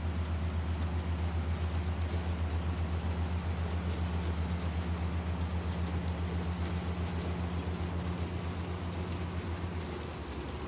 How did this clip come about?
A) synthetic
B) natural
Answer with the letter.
B